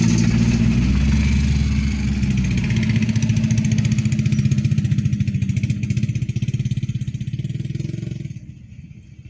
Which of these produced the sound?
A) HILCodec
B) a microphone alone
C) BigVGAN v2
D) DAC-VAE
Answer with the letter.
B